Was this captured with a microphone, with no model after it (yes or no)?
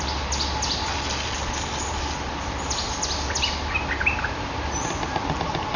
yes